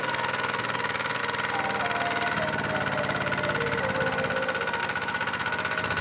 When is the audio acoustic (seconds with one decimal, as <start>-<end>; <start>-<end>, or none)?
1.2-4.8